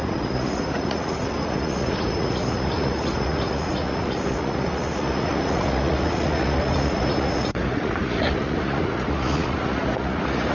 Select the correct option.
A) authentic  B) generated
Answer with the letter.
B